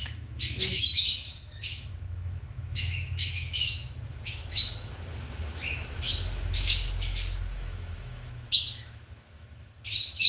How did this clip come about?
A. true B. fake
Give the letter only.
B